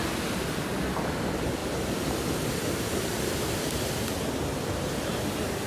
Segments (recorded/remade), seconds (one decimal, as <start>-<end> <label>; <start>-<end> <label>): 0.0-1.6 recorded; 1.6-5.0 remade; 5.0-5.7 recorded